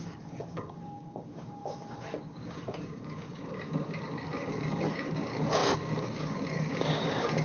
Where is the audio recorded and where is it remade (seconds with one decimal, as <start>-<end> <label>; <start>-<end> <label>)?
0.0-7.4 remade